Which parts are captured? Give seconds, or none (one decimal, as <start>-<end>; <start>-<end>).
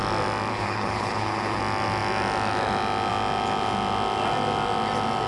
0.0-0.5; 1.6-5.3